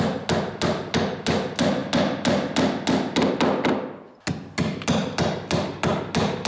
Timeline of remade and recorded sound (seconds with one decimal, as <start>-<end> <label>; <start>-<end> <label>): 0.0-6.5 recorded